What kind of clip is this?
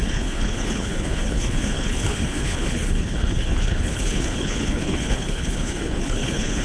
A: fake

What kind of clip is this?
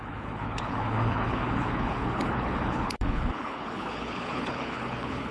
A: fake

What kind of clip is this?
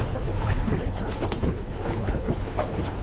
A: fake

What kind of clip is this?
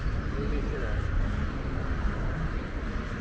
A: real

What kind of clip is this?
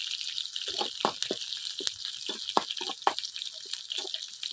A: real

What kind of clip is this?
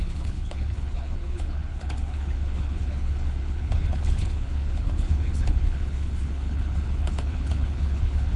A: fake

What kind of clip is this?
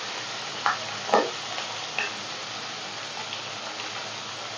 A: real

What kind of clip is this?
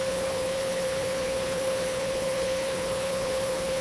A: fake